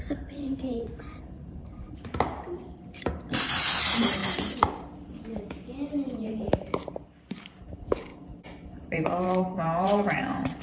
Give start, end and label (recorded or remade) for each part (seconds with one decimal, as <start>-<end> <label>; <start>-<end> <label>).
0.0-10.6 remade